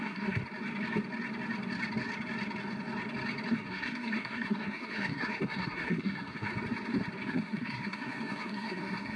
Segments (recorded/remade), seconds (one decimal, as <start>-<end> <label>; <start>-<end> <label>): 0.0-0.4 remade; 0.4-3.5 recorded; 3.5-6.5 remade; 6.5-7.3 recorded; 7.3-9.2 remade